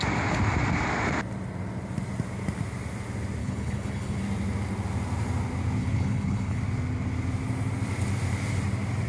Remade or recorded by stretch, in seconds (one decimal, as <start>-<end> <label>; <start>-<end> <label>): 0.0-3.4 recorded; 3.4-4.2 remade; 4.2-5.8 recorded; 5.8-6.6 remade; 6.6-9.1 recorded